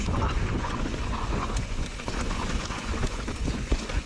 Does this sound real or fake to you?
fake